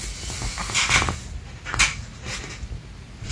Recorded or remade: recorded